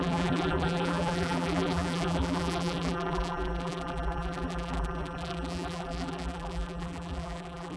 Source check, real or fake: fake